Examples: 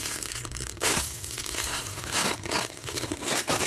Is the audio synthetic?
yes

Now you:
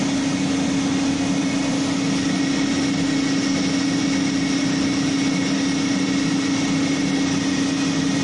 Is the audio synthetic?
no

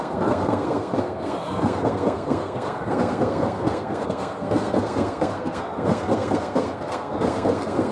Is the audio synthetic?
yes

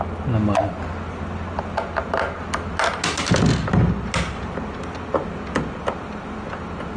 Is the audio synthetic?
no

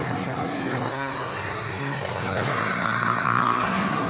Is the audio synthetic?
yes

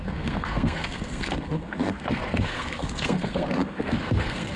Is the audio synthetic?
yes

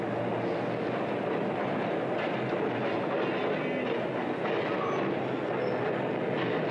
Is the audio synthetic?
no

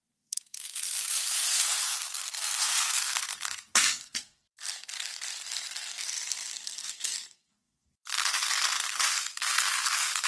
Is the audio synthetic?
yes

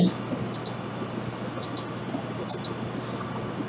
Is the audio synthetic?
no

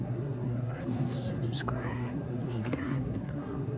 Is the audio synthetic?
yes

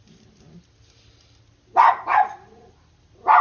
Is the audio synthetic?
no